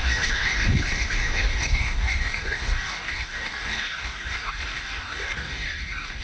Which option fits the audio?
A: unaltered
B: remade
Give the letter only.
B